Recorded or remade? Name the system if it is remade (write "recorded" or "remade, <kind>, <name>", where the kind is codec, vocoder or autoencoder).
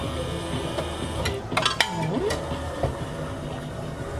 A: recorded